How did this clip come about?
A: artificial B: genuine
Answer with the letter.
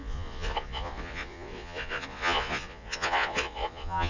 A